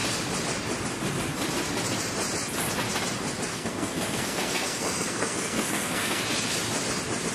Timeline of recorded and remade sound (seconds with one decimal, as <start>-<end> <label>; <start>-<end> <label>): 0.0-3.5 recorded; 3.5-6.2 remade; 6.2-7.3 recorded